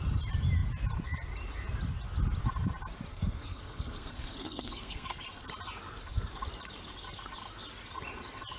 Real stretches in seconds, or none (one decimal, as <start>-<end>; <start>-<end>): 0.0-3.1; 5.2-8.6